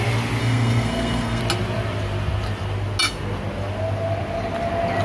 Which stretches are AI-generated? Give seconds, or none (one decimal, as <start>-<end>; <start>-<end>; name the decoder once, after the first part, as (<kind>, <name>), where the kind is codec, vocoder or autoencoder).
0.4-1.4 (codec, SNAC)